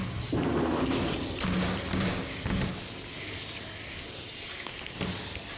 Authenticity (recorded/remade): recorded